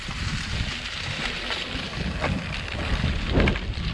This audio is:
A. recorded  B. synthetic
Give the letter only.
A